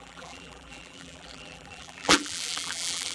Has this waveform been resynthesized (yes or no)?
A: yes